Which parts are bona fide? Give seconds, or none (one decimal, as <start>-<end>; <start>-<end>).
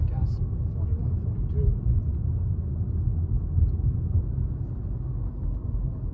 0.0-6.1